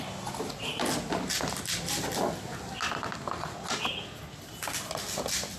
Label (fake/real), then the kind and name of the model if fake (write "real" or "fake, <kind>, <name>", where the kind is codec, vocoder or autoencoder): real